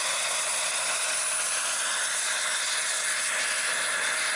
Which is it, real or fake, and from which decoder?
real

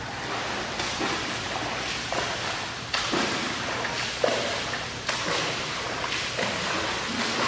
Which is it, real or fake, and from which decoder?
real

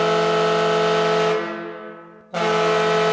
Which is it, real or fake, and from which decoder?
real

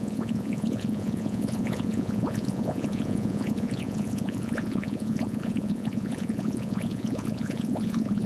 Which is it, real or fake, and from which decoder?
fake, vocoder, Vocos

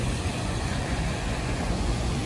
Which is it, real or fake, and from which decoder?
fake, vocoder, Vocos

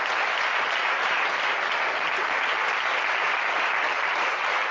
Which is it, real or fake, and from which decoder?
real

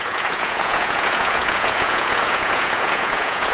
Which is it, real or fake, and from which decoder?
fake, vocoder, Vocos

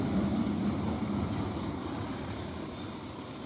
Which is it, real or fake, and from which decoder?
real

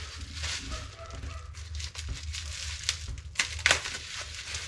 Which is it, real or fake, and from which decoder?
real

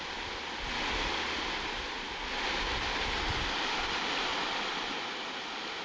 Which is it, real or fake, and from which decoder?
real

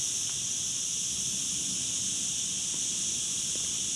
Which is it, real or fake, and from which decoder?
real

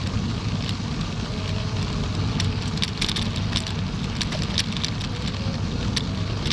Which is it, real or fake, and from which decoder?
real